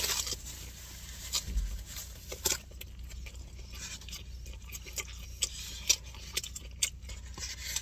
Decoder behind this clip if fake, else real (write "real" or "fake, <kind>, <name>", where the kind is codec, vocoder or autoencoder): real